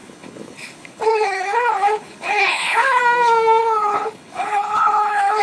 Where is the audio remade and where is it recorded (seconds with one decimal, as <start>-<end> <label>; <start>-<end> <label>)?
0.0-3.0 remade; 3.0-3.6 recorded; 3.6-5.4 remade